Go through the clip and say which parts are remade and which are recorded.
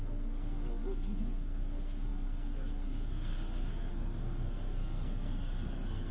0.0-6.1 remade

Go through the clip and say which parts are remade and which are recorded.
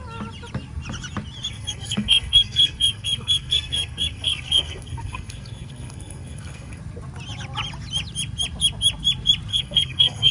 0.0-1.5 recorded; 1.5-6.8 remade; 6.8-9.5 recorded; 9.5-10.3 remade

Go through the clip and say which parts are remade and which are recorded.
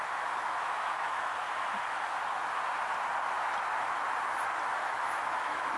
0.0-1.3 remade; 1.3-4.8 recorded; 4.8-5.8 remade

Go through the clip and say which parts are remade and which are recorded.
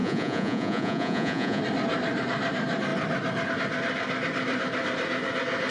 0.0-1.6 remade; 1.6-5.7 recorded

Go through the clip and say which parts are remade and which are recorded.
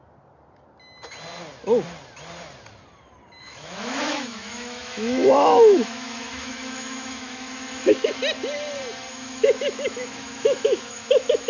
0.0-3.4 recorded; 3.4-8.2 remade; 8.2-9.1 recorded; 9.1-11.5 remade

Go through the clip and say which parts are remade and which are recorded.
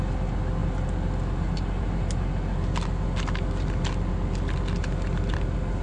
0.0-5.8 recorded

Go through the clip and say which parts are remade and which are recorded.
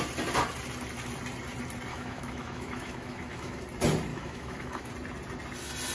0.0-1.9 recorded; 1.9-3.6 remade; 3.6-4.1 recorded; 4.1-4.9 remade; 4.9-5.9 recorded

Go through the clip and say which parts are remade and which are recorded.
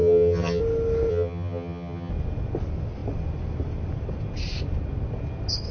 0.0-0.6 remade; 0.6-1.1 recorded; 1.1-2.1 remade; 2.1-5.7 recorded